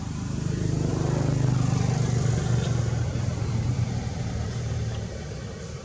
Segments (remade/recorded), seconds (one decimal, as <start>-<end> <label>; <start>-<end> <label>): 0.0-0.9 remade; 0.9-3.1 recorded; 3.1-5.8 remade